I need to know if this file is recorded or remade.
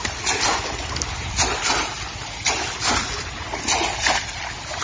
recorded